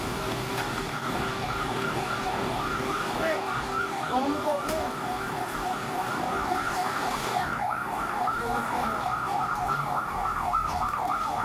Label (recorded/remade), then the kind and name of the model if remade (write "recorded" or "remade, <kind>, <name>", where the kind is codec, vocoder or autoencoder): remade, codec, DAC